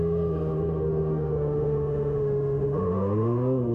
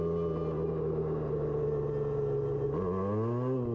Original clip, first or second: second